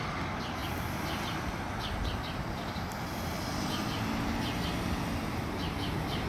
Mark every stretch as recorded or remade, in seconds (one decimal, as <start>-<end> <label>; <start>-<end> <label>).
0.0-6.3 recorded